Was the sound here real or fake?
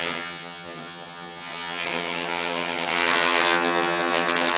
fake